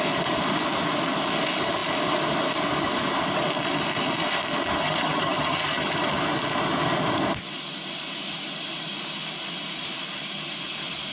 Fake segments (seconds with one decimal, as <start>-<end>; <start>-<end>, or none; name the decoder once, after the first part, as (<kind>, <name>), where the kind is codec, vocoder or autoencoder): 4.8-6.1 (vocoder, HiFi-GAN)